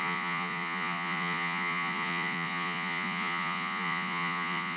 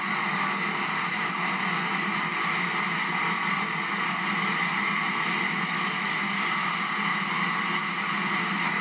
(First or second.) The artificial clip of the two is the first